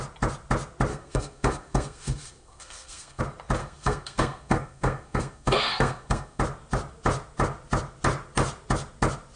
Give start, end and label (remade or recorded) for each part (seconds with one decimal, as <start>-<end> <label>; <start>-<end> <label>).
0.0-0.9 recorded; 0.9-3.2 remade; 3.2-3.6 recorded; 3.6-6.4 remade; 6.4-9.4 recorded